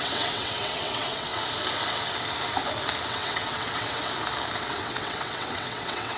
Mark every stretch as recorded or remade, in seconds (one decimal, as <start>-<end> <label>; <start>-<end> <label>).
0.0-1.3 remade; 1.3-3.1 recorded; 3.1-4.0 remade; 4.0-4.6 recorded; 4.6-6.2 remade